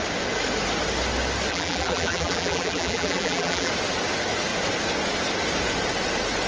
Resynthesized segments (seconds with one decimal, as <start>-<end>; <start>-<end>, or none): 1.5-3.7